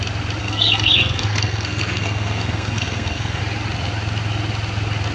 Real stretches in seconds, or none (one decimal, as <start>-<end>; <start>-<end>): 0.0-0.4; 3.4-5.1